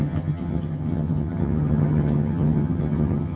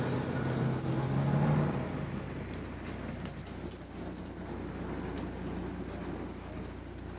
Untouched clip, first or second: second